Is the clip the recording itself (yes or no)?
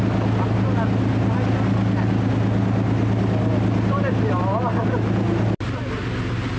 yes